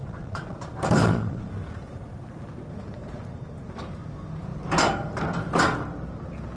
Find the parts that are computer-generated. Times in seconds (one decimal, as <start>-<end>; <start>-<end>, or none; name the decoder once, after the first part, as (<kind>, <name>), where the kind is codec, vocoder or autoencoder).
0.0-0.6 (vocoder, Vocos); 1.0-1.5